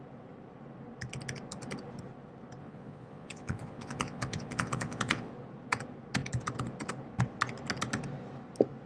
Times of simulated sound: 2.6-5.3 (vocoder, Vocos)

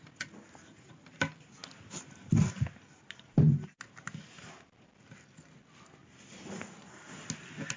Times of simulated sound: none

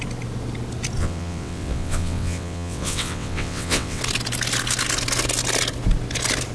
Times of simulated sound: 1.0-4.0 (vocoder, WaveNeXt)